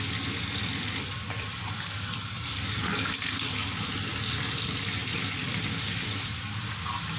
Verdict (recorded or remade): recorded